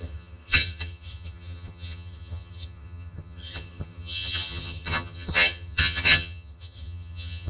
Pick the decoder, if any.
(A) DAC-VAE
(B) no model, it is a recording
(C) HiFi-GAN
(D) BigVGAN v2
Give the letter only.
C